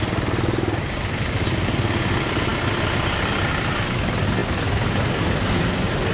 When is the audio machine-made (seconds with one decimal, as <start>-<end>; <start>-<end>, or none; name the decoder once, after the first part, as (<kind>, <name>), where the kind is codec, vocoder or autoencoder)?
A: none